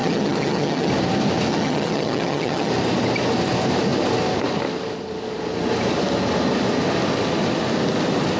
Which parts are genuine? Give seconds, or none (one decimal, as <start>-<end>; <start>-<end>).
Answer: 0.9-1.5; 2.7-8.4

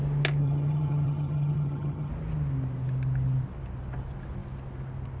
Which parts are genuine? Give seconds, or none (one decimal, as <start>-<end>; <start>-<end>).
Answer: 0.0-0.4; 2.1-5.2

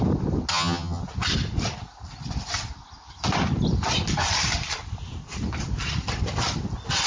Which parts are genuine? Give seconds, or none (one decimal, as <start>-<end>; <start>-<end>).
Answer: 0.0-0.5; 1.0-7.1

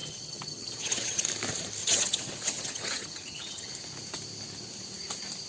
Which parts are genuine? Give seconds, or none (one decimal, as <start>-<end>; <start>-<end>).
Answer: 1.2-1.8; 3.7-5.5